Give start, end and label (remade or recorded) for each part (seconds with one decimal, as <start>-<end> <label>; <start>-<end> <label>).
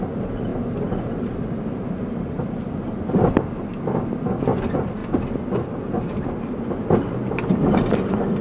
0.0-8.4 recorded